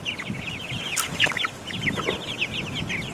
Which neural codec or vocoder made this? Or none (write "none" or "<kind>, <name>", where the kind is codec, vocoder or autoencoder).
none